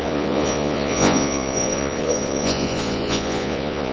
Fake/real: fake